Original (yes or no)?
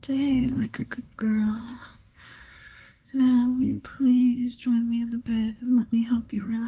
no